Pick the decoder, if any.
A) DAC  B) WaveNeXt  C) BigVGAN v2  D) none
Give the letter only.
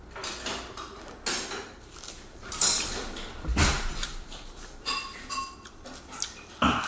D